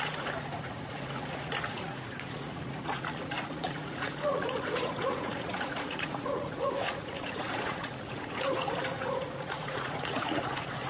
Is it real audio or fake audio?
fake